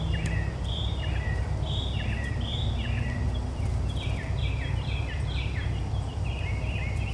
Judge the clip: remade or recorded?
recorded